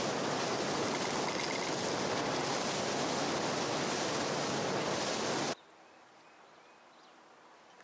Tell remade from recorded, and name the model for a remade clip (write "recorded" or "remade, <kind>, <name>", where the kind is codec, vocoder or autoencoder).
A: recorded